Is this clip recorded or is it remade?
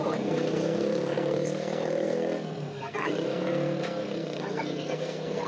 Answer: remade